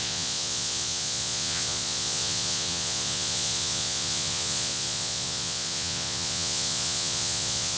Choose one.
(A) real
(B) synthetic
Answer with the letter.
B